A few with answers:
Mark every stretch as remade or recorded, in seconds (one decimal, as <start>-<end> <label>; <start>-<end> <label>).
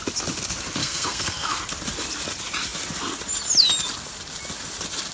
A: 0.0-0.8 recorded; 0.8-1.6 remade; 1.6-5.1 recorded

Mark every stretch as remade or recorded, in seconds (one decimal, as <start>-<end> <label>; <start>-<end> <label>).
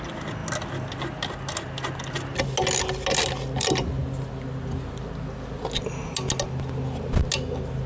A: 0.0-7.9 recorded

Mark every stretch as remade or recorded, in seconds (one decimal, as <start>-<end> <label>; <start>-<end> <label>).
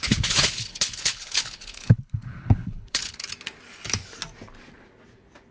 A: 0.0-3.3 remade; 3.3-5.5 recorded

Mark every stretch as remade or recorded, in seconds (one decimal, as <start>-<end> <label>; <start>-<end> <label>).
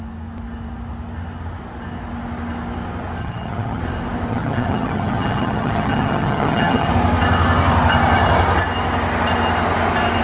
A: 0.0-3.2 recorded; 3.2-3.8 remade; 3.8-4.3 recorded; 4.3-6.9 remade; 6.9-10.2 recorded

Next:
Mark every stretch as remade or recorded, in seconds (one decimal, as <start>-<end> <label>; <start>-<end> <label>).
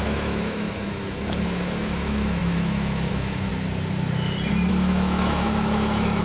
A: 0.0-3.5 remade; 3.5-4.7 recorded; 4.7-6.2 remade